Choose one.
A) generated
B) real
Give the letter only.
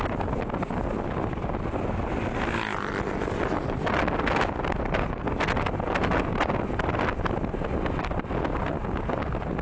B